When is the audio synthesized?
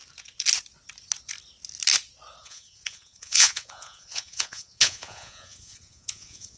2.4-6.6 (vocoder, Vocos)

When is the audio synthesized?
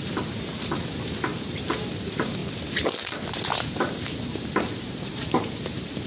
0.0-0.5 (vocoder, BigVGAN v2); 1.4-2.4; 3.3-6.1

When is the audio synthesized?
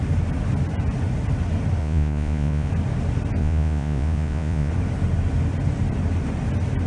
1.8-2.7 (vocoder, Vocos); 3.4-4.7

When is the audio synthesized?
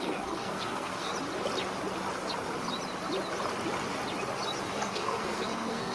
0.0-1.1 (codec, SNAC); 4.6-5.9